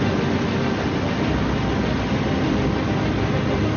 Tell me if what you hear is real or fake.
real